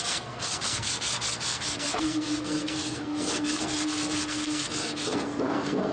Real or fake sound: fake